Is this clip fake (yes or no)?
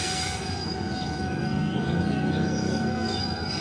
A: yes